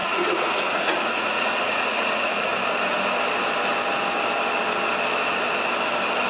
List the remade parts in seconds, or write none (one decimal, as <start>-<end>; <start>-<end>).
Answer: 0.0-2.5